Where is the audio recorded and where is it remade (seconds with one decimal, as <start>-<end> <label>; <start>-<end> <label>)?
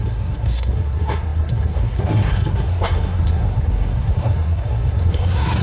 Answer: 0.0-5.6 remade